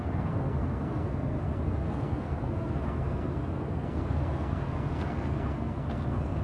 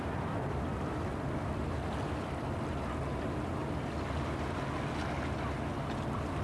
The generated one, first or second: first